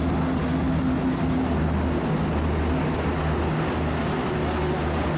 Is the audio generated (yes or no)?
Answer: no